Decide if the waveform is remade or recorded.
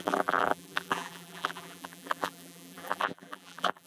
remade